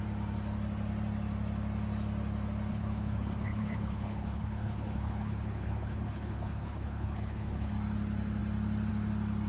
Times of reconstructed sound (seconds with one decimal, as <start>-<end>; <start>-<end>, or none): 2.7-7.7